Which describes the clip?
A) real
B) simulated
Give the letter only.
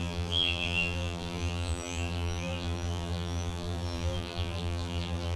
B